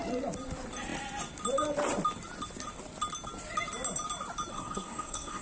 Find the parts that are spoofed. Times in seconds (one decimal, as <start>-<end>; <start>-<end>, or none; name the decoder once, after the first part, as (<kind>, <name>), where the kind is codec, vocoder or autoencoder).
4.5-5.4 (codec, SNAC)